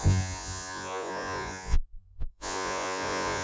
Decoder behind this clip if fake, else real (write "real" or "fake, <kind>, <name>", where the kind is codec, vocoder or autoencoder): fake, vocoder, Vocos